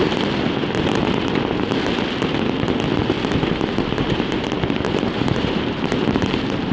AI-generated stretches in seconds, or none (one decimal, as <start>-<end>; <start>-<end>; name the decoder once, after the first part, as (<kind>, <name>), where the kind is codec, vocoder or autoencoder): 3.4-6.7 (vocoder, BigVGAN v2)